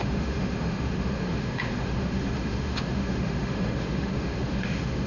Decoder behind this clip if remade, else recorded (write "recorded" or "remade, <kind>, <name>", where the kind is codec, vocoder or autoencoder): remade, autoencoder, DAC-VAE